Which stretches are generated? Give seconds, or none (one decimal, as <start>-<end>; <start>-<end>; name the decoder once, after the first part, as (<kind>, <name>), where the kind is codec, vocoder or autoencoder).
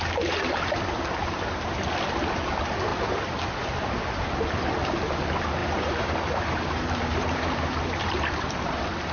5.6-8.7 (vocoder, BigVGAN v2)